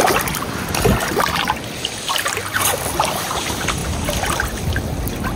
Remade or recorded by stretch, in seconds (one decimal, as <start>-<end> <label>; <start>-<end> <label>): 0.0-5.4 recorded